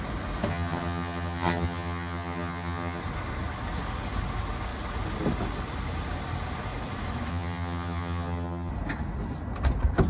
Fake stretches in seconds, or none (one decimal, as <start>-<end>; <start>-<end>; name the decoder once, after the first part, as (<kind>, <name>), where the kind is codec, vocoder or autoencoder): 0.5-3.0 (vocoder, HiFi-GAN); 7.3-8.7